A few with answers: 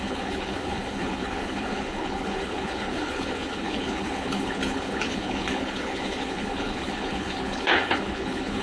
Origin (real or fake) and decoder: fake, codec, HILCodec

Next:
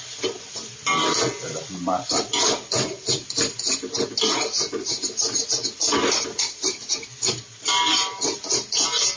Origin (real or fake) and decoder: real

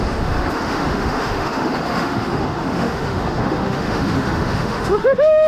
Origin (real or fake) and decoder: fake, autoencoder, DAC-VAE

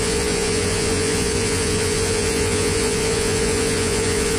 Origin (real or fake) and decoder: fake, vocoder, Vocos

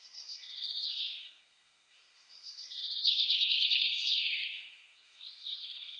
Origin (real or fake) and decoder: fake, codec, SNAC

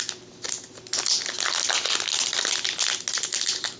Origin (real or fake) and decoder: real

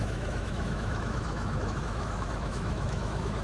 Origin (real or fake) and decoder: fake, autoencoder, DAC-VAE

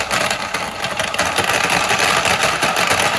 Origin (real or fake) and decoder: real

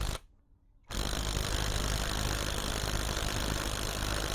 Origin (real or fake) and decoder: real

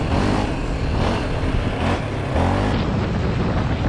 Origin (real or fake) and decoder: real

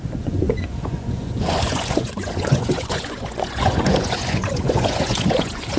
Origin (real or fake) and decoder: fake, vocoder, Vocos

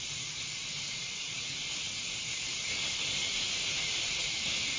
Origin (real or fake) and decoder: real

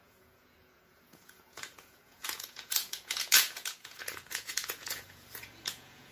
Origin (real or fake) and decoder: fake, vocoder, Vocos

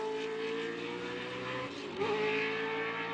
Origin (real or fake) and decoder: real